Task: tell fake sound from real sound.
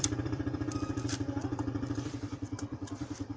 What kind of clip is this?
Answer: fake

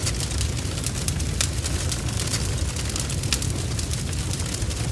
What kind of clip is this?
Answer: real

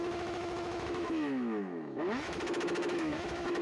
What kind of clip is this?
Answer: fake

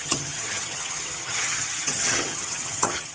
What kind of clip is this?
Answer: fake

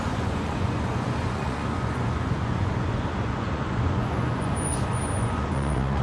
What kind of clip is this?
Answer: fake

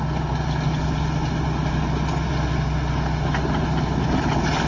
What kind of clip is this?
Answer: real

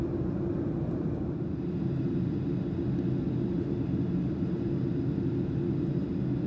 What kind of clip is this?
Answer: real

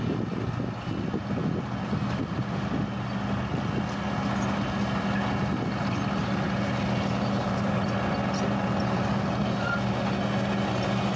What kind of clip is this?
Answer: real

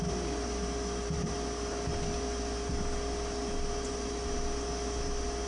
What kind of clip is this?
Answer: real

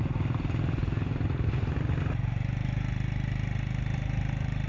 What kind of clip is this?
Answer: real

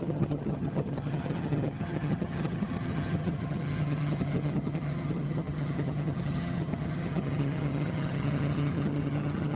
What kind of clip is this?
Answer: fake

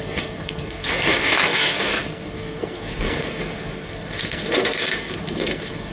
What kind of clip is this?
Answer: fake